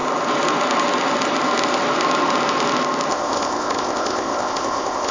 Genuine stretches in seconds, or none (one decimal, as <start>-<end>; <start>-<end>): 0.0-3.1